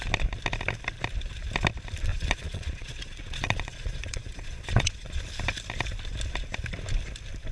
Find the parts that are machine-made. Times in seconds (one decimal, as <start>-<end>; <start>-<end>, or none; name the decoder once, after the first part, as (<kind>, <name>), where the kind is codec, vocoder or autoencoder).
2.1-5.2 (vocoder, Vocos)